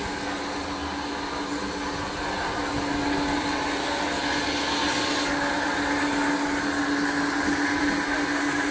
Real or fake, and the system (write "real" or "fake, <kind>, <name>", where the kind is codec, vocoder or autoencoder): real